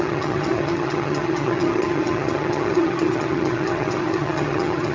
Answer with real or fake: fake